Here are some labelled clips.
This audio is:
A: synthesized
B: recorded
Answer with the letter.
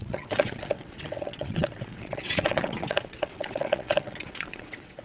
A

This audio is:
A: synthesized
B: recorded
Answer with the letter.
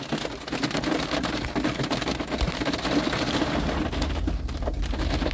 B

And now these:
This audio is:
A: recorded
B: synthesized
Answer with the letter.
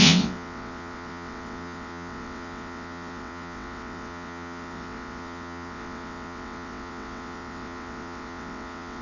B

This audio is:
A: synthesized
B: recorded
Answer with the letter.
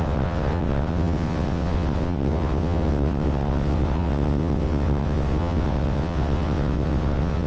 A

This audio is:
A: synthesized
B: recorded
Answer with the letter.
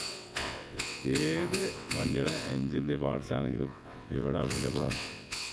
A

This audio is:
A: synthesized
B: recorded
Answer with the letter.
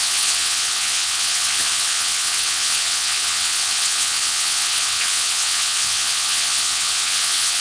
A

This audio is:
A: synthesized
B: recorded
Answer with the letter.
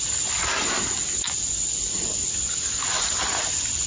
B